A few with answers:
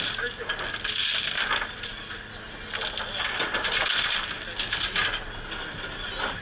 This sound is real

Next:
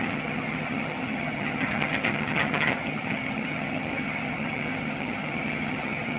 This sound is fake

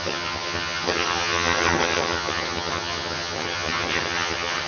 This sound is fake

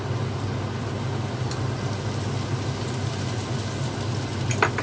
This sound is real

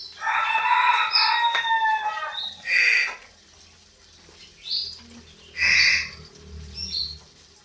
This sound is real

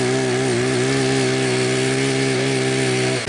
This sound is real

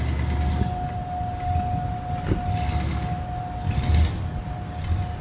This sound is real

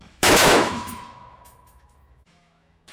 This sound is fake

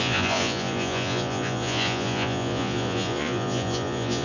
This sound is fake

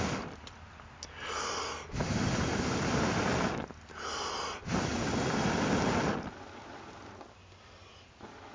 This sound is real